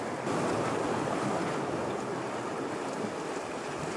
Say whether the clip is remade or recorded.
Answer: recorded